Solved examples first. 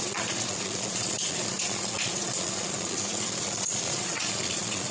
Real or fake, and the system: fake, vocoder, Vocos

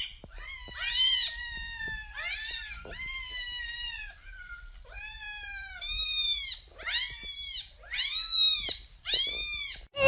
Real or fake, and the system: real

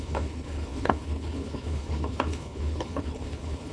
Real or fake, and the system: fake, codec, HILCodec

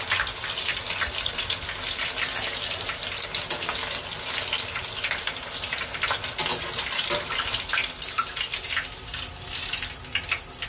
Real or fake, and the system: real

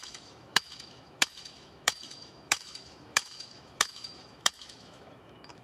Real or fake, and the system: fake, autoencoder, DAC-VAE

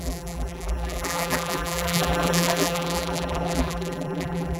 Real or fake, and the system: fake, vocoder, BigVGAN v2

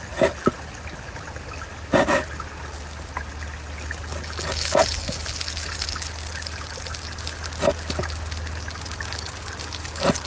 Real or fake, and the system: real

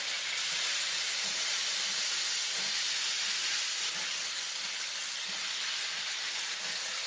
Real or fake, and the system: real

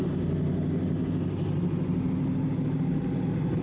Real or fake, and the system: real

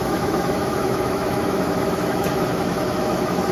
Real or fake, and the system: fake, autoencoder, DAC-VAE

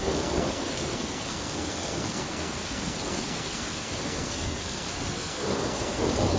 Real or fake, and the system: fake, codec, SNAC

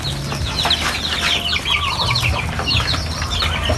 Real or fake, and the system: real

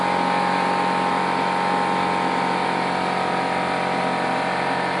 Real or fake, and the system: real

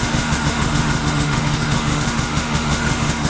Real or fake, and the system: fake, autoencoder, DAC-VAE